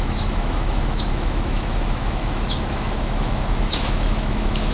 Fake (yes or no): yes